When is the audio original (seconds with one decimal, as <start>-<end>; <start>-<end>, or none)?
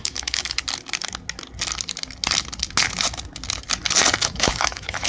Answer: 0.6-4.2